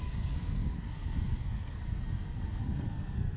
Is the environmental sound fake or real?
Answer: fake